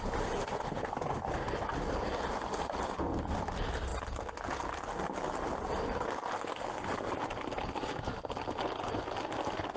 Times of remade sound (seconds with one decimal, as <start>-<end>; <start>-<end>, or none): none